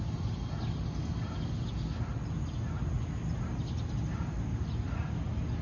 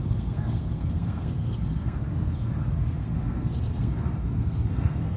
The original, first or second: first